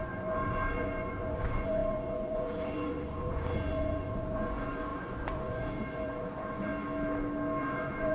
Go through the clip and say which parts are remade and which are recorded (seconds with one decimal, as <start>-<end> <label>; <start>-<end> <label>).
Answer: 0.0-6.7 remade; 6.7-7.6 recorded; 7.6-8.1 remade